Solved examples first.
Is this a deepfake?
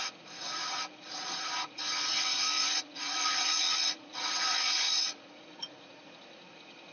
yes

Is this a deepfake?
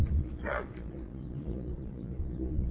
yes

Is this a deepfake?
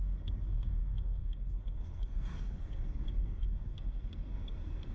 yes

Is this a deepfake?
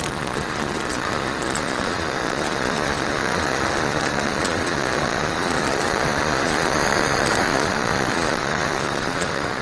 yes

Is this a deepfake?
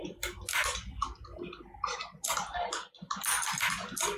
no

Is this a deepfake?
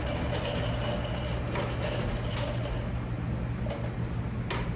no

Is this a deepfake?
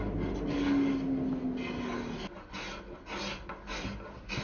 no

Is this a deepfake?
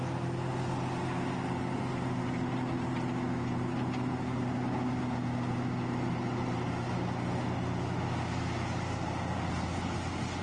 no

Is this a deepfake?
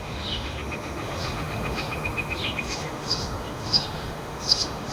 yes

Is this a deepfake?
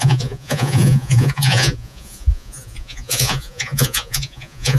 yes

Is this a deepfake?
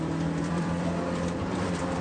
yes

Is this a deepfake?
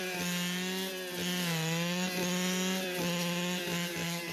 no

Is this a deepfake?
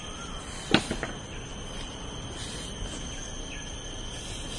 no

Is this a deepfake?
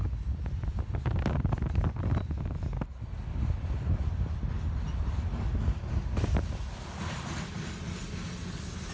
no